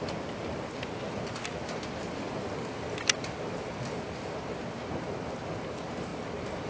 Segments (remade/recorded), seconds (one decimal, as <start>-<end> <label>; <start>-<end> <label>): 0.0-6.7 recorded